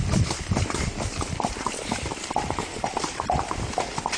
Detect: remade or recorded recorded